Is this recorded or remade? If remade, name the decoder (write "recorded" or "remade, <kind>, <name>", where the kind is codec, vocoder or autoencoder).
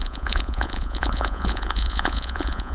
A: remade, vocoder, Vocos